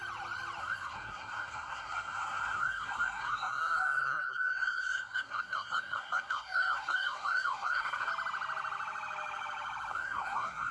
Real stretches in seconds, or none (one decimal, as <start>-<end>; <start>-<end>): 0.0-0.6; 8.1-9.9